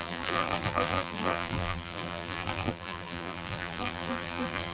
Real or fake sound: fake